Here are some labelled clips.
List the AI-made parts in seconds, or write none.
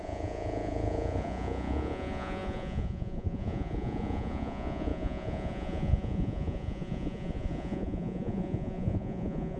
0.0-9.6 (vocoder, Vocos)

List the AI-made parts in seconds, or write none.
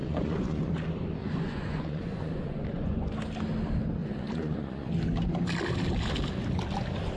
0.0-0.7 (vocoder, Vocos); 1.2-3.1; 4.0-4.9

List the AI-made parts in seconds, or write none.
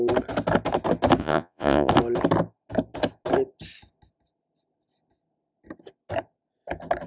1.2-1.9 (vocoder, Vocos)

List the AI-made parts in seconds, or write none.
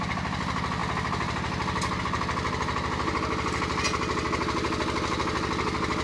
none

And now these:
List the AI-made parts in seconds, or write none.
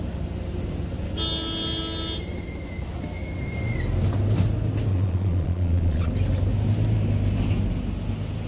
4.9-6.1 (vocoder, Vocos)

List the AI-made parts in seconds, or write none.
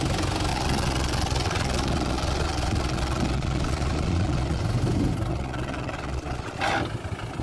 0.5-4.6 (vocoder, Vocos); 5.3-6.6